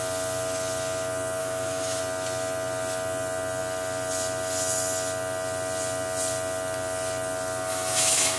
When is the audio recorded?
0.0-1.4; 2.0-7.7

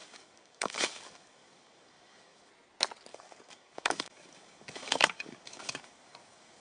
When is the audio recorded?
2.5-3.1

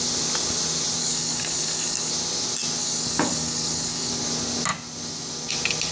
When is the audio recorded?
0.0-1.0; 2.1-2.8; 4.1-5.9

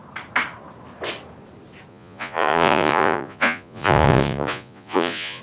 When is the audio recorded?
0.0-1.9

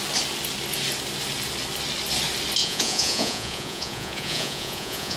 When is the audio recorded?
0.0-2.6